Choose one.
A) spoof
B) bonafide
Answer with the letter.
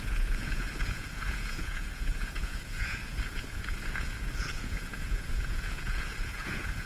A